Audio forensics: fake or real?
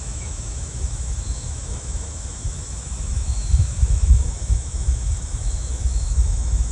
fake